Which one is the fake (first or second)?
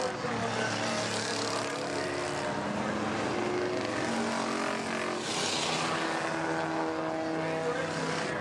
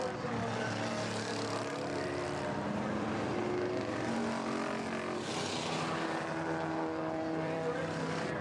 second